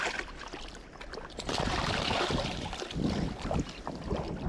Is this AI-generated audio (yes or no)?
no